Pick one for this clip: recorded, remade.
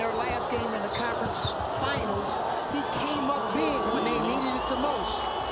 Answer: recorded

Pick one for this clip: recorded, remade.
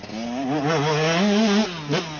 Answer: recorded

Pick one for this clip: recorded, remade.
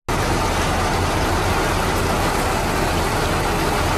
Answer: recorded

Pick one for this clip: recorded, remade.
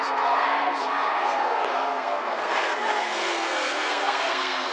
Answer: remade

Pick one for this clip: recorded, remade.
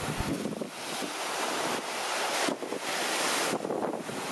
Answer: recorded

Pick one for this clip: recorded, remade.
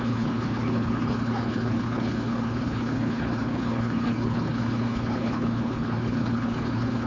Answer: remade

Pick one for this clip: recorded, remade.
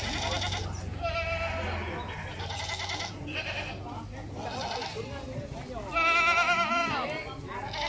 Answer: recorded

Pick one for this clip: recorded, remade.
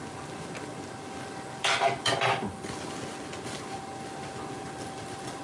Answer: recorded